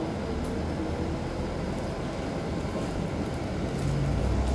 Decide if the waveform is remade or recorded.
recorded